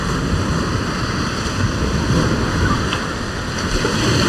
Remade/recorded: recorded